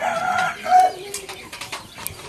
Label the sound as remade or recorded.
recorded